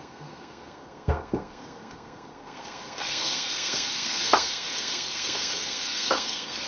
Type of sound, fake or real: fake